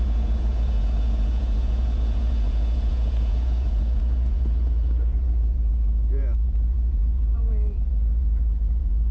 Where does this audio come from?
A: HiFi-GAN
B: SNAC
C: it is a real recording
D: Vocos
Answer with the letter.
D